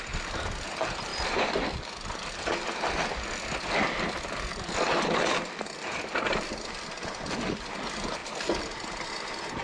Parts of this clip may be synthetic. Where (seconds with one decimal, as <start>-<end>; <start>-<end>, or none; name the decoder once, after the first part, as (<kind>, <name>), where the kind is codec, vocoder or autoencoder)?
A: none